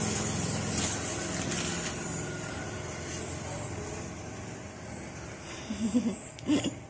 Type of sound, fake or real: real